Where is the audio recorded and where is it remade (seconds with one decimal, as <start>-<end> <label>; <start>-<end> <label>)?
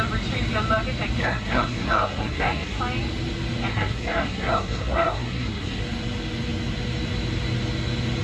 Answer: 0.0-1.2 recorded; 1.2-2.8 remade; 2.8-3.7 recorded; 3.7-5.8 remade; 5.8-8.2 recorded